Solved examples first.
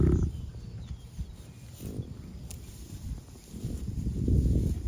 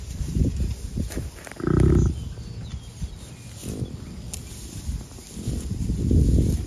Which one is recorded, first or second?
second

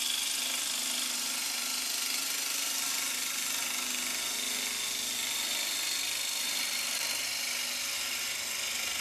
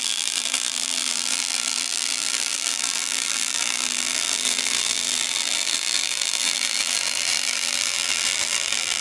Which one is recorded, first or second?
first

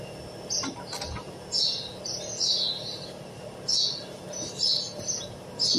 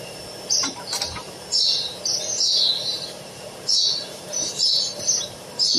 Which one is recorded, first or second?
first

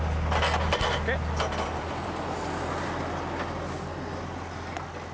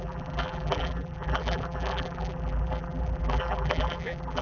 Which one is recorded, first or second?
first